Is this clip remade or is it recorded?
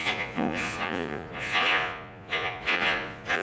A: remade